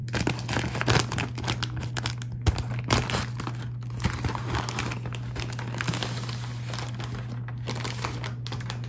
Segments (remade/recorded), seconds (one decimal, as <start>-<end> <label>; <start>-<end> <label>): 0.0-8.9 recorded